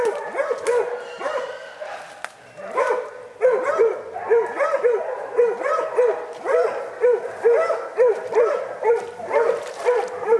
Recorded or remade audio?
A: remade